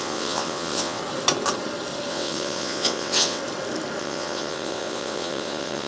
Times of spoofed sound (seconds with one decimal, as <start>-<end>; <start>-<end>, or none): 0.0-1.0; 2.1-3.4; 4.0-5.9